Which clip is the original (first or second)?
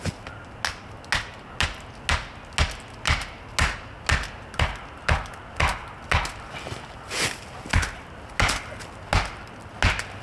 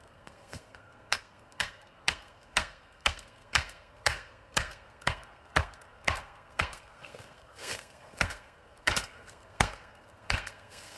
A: first